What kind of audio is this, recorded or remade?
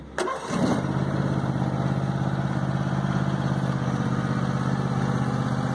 recorded